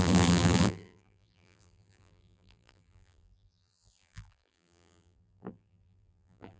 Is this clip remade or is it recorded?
remade